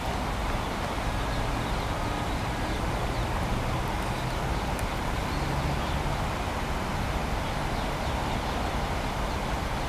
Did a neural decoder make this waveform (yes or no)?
no